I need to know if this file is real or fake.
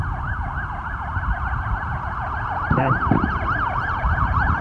fake